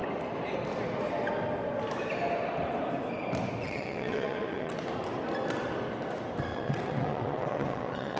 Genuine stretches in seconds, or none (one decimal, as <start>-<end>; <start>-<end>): 0.0-3.6; 4.7-6.5